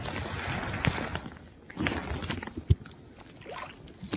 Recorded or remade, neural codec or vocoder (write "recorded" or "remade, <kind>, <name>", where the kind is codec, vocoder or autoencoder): recorded